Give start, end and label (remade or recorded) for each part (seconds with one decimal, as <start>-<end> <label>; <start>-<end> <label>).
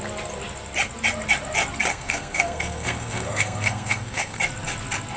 0.0-1.9 recorded; 1.9-4.4 remade; 4.4-5.2 recorded